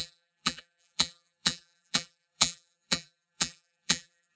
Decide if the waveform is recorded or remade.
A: remade